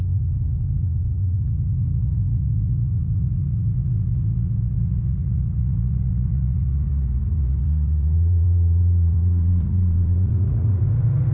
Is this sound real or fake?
fake